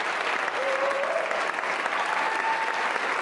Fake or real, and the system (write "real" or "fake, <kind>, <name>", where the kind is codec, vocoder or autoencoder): real